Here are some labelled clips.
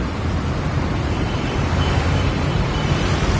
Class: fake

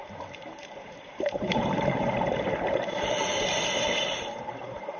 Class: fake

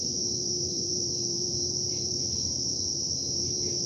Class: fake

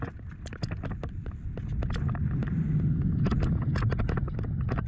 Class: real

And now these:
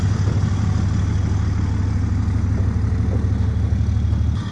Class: real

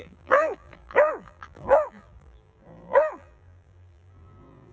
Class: fake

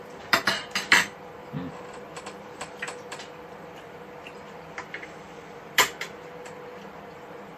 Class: fake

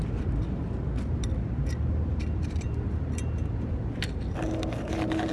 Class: fake